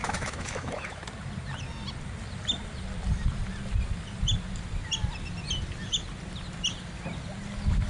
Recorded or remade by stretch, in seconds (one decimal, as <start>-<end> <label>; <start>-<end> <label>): 0.0-1.0 remade; 1.0-7.9 recorded